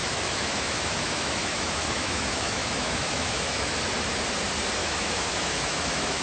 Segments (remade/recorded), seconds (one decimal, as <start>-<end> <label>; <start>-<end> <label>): 0.0-3.7 remade; 3.7-4.8 recorded; 4.8-6.2 remade